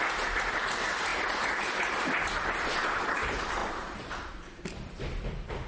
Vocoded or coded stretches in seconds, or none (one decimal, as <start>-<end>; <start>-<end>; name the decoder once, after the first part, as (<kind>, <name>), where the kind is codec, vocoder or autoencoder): none